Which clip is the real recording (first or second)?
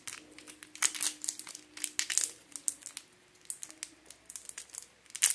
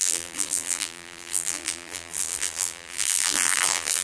first